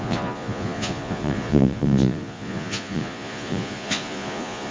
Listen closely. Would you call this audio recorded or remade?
remade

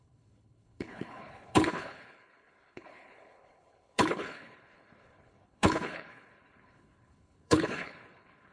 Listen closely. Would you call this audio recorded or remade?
remade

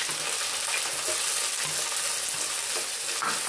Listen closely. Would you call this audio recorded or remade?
recorded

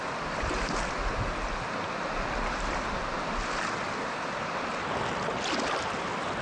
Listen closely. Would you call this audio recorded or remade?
recorded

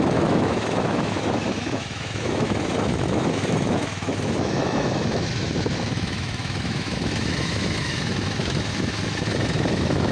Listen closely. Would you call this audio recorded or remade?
remade